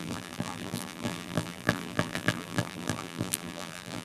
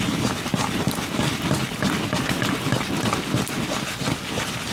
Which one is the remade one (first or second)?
first